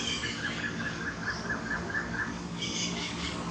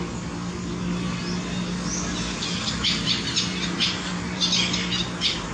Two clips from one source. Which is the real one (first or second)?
second